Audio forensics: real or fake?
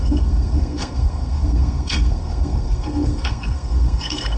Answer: fake